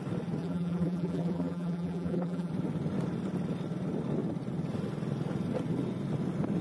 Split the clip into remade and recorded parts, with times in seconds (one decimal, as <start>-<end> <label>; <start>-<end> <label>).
0.0-0.4 recorded; 0.4-2.5 remade; 2.5-6.6 recorded